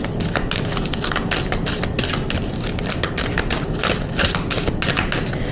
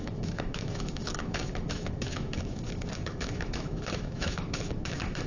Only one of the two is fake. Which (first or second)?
second